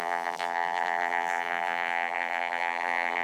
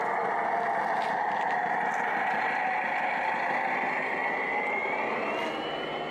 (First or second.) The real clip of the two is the second